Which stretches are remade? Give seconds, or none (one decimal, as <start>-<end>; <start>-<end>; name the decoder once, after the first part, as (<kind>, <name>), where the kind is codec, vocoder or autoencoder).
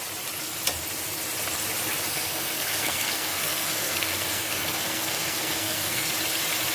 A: 2.1-6.1 (codec, SNAC)